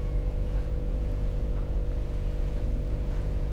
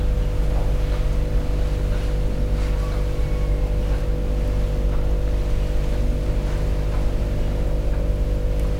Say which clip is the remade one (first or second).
first